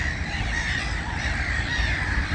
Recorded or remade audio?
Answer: recorded